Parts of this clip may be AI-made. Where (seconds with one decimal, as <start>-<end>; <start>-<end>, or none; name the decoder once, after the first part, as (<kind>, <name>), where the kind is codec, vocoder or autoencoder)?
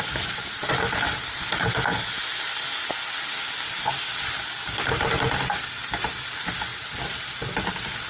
none